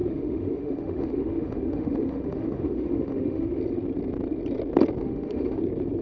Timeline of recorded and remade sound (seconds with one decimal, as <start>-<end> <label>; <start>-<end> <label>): 0.0-3.6 remade; 3.6-5.0 recorded; 5.0-5.6 remade; 5.6-6.0 recorded